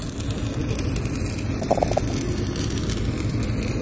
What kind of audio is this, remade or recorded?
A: recorded